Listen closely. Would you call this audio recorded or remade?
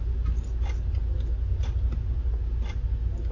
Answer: recorded